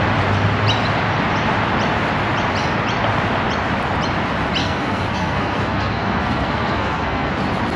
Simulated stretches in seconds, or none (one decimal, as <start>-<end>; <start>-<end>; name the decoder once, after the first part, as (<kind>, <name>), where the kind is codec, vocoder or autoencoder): 4.6-7.3 (codec, SNAC)